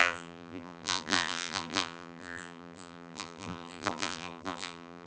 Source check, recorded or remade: remade